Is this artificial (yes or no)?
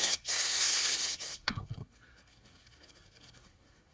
yes